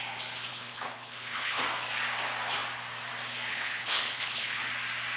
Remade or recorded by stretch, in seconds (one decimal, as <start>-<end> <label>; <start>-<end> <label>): 0.0-0.5 recorded; 0.5-1.6 remade; 1.6-3.5 recorded; 3.5-4.6 remade; 4.6-5.2 recorded